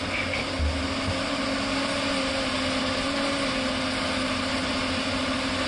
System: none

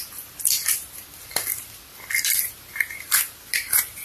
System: none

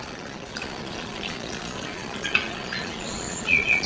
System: vocoder, Vocos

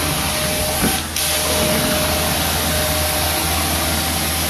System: none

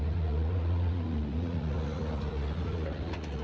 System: vocoder, Vocos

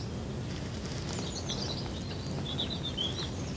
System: none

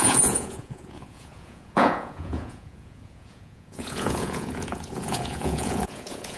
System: vocoder, Vocos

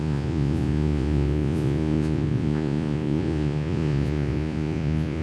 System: vocoder, Vocos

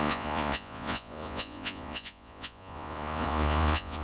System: vocoder, Vocos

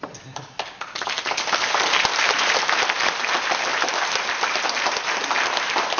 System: none